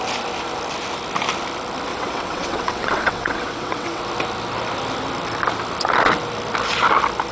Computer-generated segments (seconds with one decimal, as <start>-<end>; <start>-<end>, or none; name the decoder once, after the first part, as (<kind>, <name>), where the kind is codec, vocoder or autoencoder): 1.9-4.0 (vocoder, WaveNeXt)